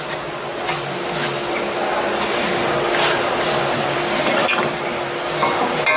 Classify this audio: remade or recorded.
recorded